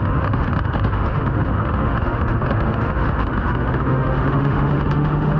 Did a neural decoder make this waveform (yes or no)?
yes